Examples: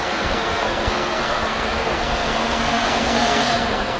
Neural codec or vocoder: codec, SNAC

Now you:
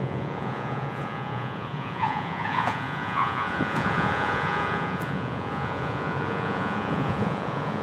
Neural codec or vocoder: vocoder, Vocos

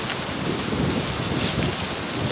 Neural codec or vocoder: none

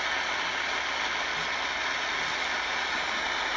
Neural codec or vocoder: none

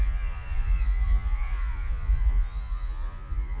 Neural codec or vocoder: vocoder, Vocos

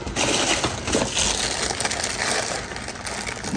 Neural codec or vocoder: none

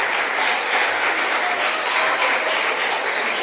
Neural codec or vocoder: none